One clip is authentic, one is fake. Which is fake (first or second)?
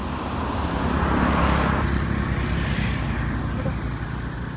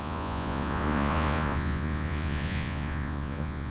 second